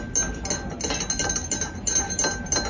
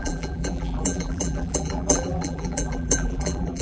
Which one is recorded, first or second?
first